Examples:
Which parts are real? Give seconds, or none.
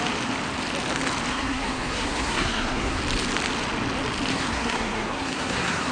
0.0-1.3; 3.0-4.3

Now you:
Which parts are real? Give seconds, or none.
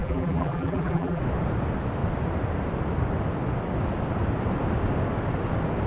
1.2-5.9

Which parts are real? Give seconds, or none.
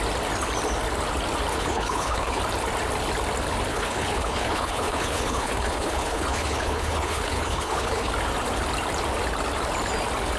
0.0-1.5; 2.4-3.7; 8.1-10.4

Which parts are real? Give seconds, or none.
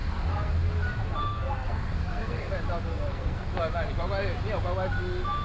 0.5-1.2; 2.5-2.9; 3.5-5.4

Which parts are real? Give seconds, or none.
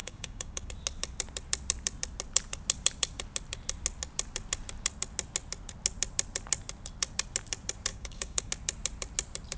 0.7-7.9; 8.5-9.6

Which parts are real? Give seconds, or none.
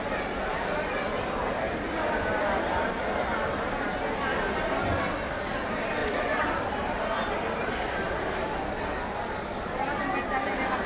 0.0-6.0; 8.5-10.9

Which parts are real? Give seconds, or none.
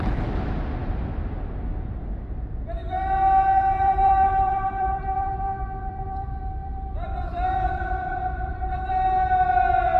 0.0-3.8; 8.5-10.0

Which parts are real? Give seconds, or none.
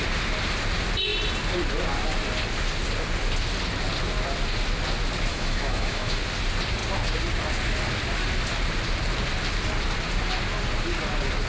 0.0-5.3; 6.2-11.5